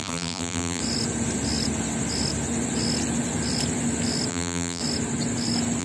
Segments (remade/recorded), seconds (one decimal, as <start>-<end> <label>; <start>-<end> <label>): 0.0-0.8 remade; 0.8-4.3 recorded; 4.3-4.8 remade; 4.8-5.8 recorded